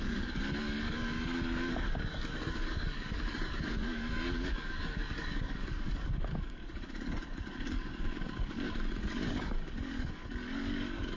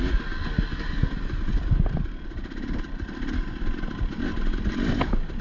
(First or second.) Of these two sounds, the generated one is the first